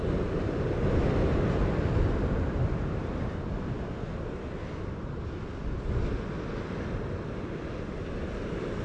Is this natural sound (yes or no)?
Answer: yes